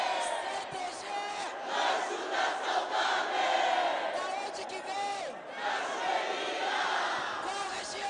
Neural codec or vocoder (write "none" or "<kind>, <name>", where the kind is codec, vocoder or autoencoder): none